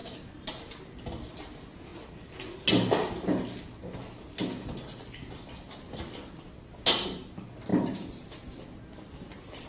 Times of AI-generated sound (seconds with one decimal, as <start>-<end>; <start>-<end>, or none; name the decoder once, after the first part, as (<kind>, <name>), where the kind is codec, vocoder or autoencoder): 7.7-8.8 (vocoder, BigVGAN v2)